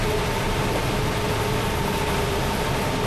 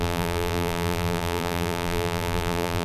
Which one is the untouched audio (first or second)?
first